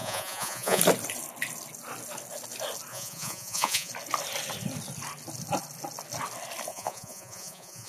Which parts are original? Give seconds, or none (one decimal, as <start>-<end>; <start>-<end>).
0.8-2.9; 3.9-6.7